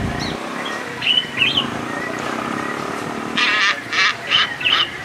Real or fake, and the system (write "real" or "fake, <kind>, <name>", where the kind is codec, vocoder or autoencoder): fake, vocoder, BigVGAN v2